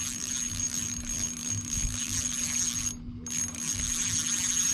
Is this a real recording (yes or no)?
yes